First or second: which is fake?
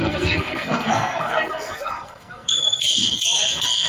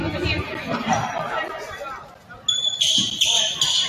first